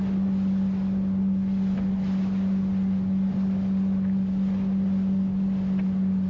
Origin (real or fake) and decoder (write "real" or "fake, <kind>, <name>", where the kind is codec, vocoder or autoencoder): real